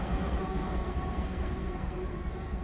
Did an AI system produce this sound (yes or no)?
yes